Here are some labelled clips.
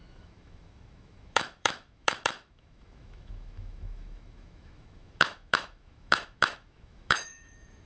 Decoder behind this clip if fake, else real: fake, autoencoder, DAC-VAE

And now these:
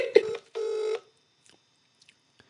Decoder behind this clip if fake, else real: fake, vocoder, BigVGAN v2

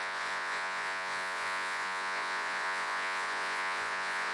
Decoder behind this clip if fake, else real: fake, vocoder, Vocos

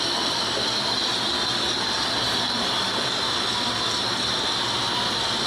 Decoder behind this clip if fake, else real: real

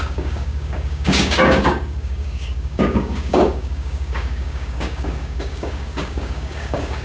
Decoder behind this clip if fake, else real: fake, codec, DAC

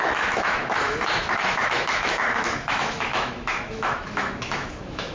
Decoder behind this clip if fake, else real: fake, autoencoder, DAC-VAE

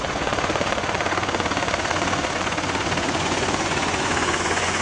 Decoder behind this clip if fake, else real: fake, vocoder, Vocos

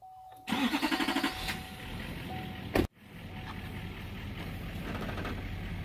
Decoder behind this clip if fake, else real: real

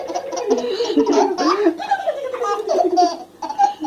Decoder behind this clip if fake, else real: real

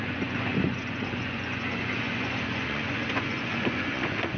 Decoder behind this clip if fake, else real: fake, vocoder, Vocos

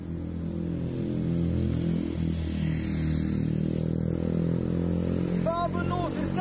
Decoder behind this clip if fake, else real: real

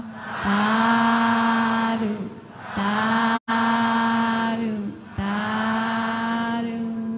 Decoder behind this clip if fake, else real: real